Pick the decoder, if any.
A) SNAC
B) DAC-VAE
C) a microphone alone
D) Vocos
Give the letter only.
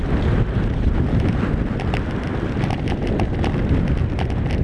C